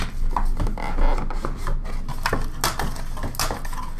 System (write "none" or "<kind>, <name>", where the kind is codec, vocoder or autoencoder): none